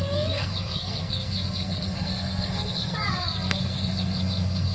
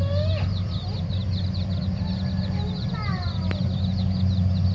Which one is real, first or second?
second